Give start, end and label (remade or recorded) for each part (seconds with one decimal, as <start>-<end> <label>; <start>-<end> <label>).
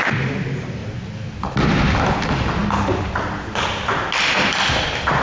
0.0-5.2 recorded